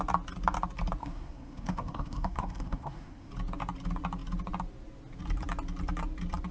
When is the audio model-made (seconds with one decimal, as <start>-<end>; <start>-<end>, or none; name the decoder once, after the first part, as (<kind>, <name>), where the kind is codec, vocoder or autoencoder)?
1.0-3.3 (codec, SNAC)